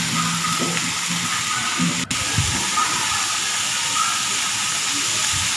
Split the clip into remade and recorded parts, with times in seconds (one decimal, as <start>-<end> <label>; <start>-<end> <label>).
0.0-5.6 recorded